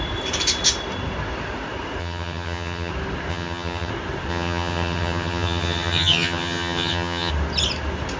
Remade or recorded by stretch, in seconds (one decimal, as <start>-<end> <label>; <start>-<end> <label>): 0.0-2.0 recorded; 2.0-2.9 remade; 2.9-3.3 recorded; 3.3-3.9 remade; 3.9-4.3 recorded; 4.3-7.3 remade; 7.3-8.2 recorded